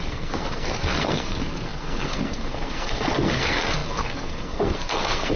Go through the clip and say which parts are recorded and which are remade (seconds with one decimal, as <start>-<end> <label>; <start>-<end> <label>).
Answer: 0.0-5.4 remade

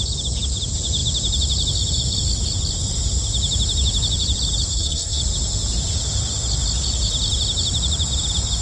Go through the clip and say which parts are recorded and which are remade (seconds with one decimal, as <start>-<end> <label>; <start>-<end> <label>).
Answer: 0.0-4.7 recorded; 4.7-5.2 remade; 5.2-8.6 recorded